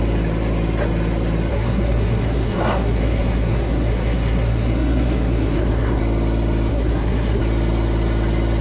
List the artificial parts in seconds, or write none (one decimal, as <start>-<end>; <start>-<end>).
1.5-6.0; 6.7-7.4